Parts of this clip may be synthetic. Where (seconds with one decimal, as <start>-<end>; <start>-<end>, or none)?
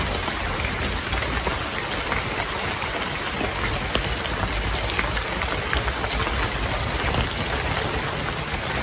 1.5-2.0